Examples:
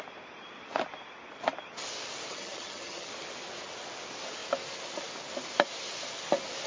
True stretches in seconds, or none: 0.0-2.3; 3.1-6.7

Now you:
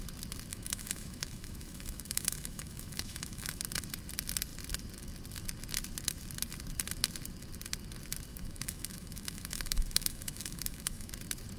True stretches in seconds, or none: 0.0-0.5; 3.6-8.3; 11.1-11.6

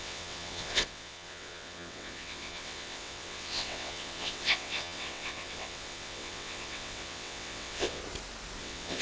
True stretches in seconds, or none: 8.0-8.6

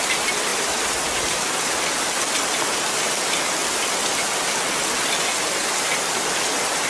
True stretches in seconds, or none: 0.0-0.5; 1.7-3.6; 4.4-5.6; 6.4-6.9